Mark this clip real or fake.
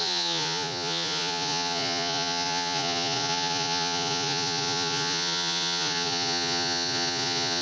fake